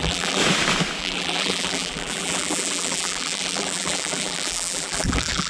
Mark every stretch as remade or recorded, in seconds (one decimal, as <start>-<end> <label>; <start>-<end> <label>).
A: 0.0-0.4 remade; 0.4-1.0 recorded; 1.0-5.5 remade